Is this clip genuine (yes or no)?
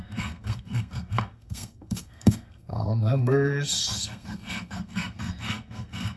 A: no